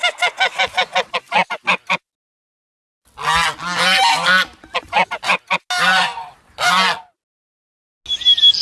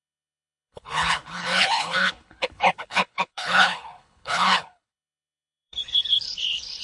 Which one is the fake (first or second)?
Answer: second